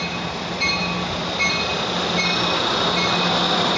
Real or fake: real